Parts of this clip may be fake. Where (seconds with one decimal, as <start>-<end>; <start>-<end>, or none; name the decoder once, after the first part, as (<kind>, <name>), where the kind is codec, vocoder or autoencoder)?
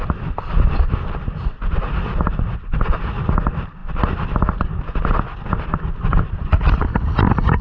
none